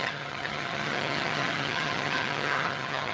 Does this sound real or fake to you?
fake